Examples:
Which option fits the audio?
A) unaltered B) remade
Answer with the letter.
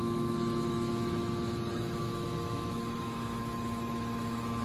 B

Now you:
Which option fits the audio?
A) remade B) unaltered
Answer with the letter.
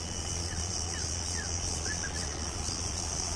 A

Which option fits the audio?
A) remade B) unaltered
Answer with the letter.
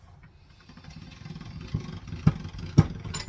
B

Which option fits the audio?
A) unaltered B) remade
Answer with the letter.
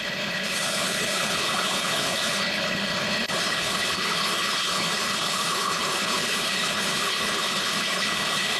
B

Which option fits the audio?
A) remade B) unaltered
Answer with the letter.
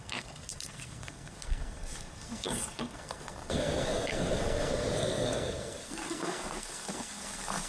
A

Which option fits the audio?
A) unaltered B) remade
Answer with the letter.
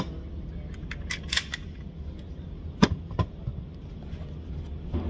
A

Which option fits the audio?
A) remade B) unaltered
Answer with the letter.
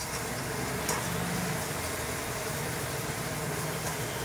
B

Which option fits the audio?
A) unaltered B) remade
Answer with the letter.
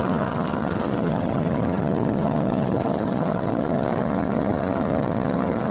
B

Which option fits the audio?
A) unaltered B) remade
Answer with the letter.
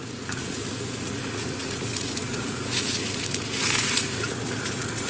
B